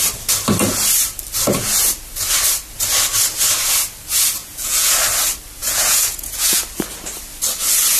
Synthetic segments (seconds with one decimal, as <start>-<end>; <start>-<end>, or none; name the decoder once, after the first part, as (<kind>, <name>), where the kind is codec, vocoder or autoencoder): 4.4-4.9 (vocoder, Vocos); 5.6-6.6